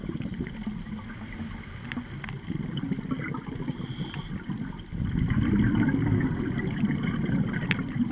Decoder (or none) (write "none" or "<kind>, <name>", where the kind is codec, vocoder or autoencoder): none